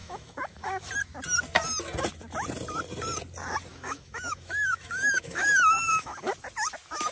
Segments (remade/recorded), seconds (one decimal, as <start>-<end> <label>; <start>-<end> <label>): 0.0-0.9 remade; 0.9-3.7 recorded; 3.7-6.3 remade; 6.3-7.1 recorded